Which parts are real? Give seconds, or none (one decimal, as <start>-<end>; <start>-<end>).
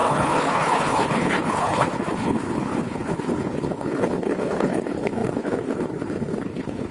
none